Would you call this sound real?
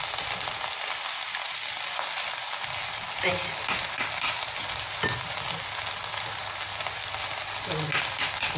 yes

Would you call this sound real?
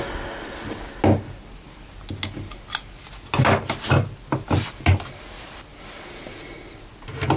yes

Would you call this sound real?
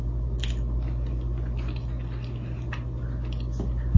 yes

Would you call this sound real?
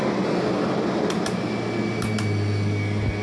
yes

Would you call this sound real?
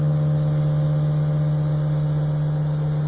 yes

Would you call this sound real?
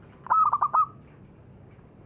yes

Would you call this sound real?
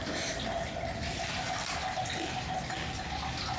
yes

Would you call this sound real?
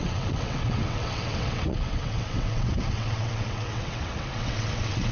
no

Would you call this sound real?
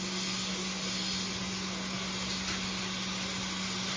yes